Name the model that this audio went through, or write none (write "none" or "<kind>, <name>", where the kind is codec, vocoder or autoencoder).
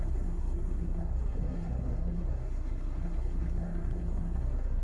codec, SNAC